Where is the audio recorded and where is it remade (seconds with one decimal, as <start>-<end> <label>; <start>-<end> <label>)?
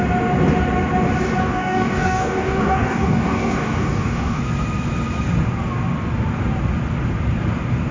0.0-1.4 recorded; 1.4-4.4 remade; 4.4-7.9 recorded